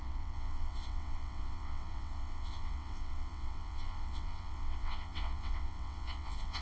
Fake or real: fake